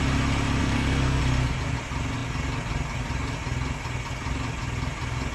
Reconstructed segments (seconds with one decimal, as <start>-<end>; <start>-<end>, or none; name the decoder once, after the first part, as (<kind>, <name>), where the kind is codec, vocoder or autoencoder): 0.6-1.2 (codec, SNAC)